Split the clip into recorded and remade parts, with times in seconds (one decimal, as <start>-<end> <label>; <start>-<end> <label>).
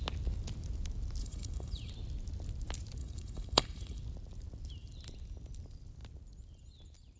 0.0-1.2 recorded; 1.2-1.9 remade; 1.9-3.0 recorded; 3.0-4.0 remade; 4.0-7.2 recorded